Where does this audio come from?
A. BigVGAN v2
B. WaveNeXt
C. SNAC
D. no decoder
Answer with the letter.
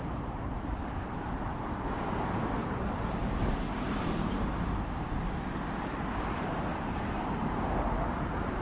A